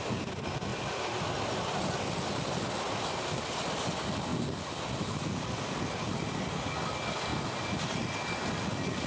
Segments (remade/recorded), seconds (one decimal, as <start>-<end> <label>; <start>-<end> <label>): 0.0-9.1 recorded